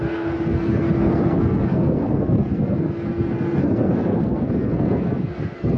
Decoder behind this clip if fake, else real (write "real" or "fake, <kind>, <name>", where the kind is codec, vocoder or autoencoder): fake, codec, SNAC